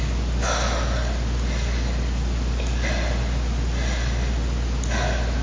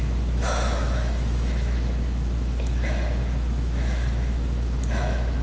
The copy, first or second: second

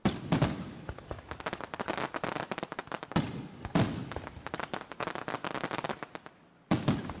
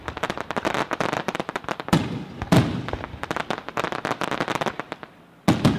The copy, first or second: first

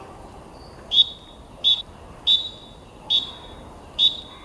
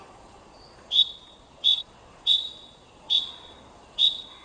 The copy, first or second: second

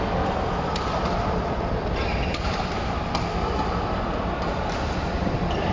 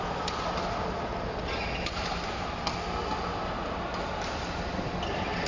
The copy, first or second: first